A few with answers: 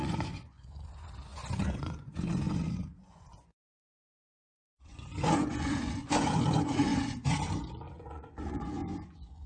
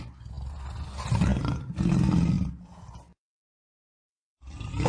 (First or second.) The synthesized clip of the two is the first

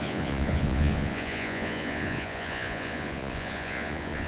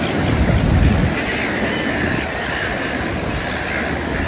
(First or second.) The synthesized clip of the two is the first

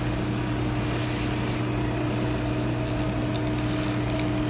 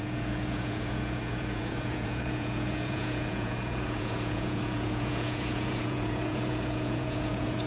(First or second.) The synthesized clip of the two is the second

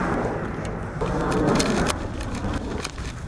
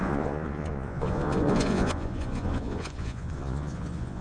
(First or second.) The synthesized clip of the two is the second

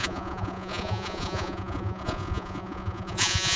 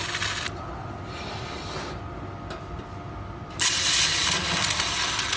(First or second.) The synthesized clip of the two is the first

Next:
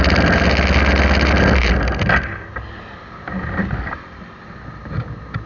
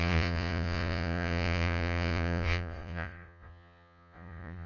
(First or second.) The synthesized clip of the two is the second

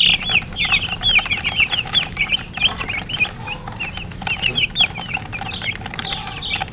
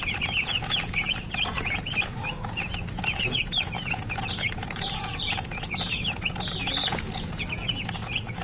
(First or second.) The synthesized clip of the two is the second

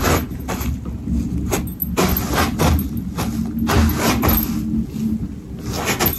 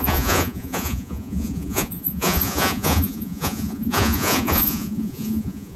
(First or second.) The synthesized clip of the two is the second